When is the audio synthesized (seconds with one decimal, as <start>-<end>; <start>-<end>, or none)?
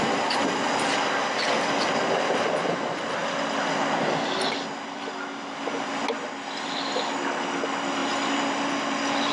none